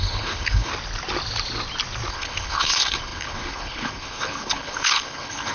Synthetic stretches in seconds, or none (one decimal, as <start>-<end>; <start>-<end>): 0.0-0.7; 2.1-5.5